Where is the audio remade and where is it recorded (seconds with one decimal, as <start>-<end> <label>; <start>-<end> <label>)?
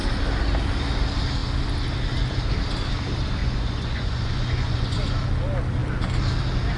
0.0-3.4 recorded; 3.4-5.0 remade; 5.0-6.8 recorded